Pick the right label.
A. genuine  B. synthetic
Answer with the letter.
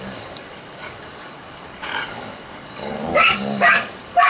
B